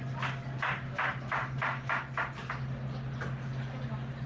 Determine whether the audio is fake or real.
real